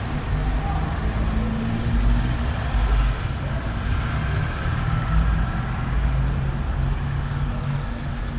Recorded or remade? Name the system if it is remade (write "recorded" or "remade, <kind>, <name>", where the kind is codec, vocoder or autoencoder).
recorded